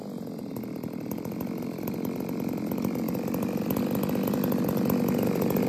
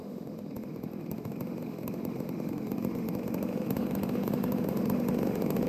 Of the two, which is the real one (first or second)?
first